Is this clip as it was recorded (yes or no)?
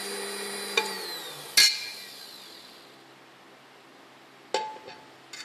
yes